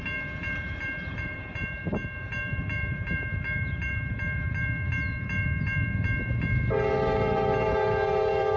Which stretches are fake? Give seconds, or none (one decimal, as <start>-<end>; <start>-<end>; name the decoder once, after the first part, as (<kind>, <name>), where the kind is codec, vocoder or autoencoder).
0.0-8.6 (vocoder, BigVGAN v2)